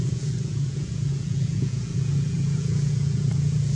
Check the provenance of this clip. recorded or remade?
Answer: remade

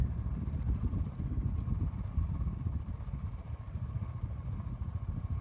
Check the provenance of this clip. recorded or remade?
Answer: recorded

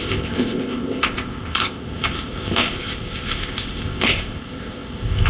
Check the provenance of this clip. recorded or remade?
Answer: remade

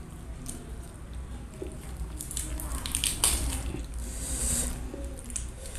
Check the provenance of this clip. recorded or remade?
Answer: recorded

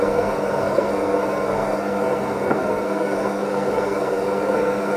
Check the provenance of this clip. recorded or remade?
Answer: remade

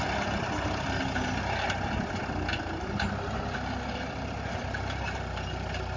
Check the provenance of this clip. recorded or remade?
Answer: recorded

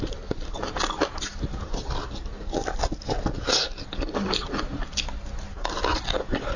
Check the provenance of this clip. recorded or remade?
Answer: recorded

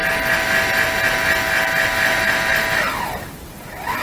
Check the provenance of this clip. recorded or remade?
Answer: recorded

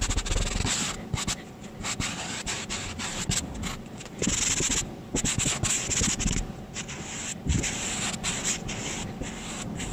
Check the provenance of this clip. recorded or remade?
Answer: recorded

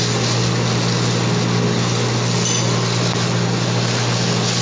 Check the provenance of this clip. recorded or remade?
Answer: recorded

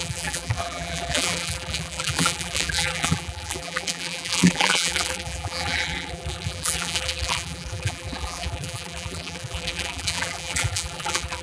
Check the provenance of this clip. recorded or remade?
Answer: remade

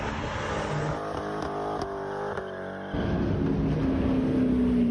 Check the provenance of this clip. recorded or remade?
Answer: recorded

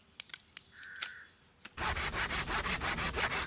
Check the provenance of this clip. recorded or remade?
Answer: recorded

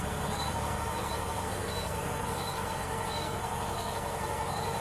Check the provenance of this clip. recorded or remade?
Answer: remade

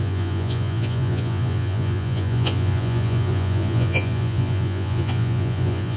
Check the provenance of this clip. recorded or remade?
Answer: remade